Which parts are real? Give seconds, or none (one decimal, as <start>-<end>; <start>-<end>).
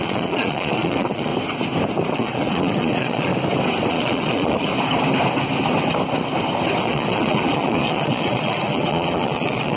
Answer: 1.3-2.1; 3.3-3.9; 4.7-6.8